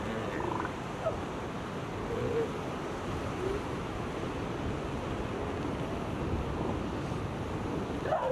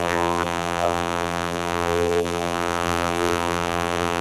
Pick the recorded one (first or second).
first